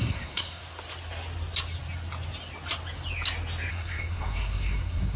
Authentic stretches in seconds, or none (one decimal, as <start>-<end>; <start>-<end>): 0.6-3.7